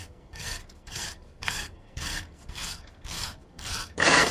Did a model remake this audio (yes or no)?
yes